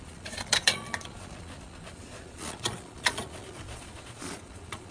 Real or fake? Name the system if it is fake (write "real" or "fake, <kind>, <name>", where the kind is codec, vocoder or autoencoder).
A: fake, vocoder, Vocos